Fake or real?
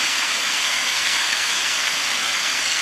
fake